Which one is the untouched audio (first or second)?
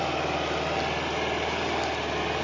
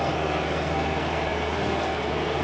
first